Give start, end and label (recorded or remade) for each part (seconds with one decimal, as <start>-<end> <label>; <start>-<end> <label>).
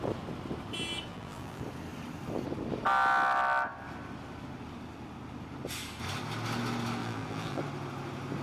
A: 0.0-1.1 recorded; 1.1-1.6 remade; 1.6-7.0 recorded; 7.0-7.6 remade; 7.6-8.4 recorded